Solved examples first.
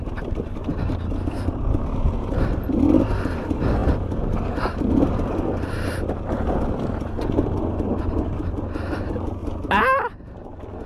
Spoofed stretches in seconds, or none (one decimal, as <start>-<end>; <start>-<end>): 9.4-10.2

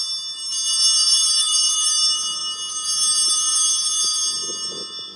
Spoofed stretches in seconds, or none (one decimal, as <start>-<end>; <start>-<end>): 1.0-2.0

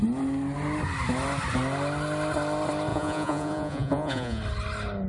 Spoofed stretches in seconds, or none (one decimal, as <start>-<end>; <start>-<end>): 2.9-4.4

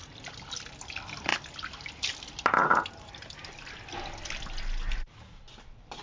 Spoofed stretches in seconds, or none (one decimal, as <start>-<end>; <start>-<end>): none